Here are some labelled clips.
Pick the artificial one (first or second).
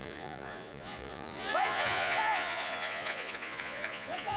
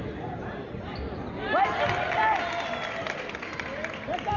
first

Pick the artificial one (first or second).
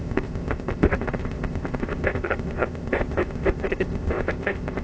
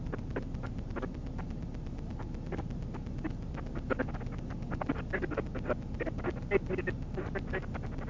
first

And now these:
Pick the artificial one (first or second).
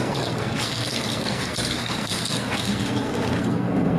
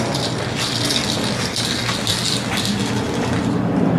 first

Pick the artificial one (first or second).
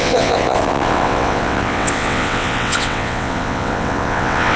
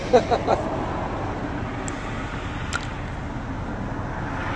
first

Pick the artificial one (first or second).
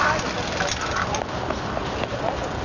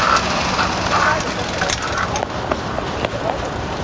second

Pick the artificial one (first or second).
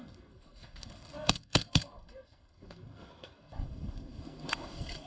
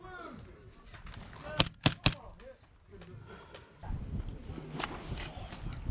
first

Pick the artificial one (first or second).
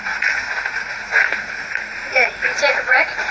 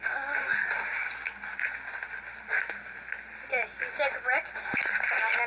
first